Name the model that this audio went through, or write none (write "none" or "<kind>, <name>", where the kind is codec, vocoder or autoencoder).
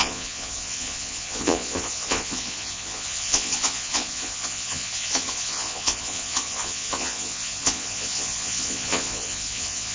vocoder, Vocos